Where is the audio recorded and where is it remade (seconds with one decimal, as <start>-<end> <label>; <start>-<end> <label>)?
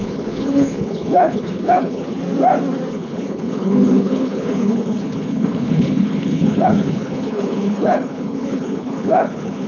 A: 0.0-2.2 remade; 2.2-2.9 recorded; 2.9-9.7 remade